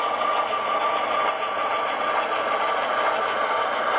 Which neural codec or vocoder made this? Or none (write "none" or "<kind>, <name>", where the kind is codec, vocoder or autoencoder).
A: none